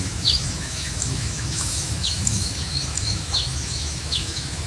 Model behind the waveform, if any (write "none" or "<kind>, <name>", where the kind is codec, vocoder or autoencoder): autoencoder, DAC-VAE